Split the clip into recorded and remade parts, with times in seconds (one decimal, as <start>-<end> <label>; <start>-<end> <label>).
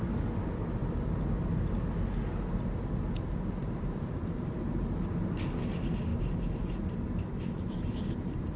0.0-3.6 recorded; 3.6-5.4 remade; 5.4-6.1 recorded; 6.1-8.6 remade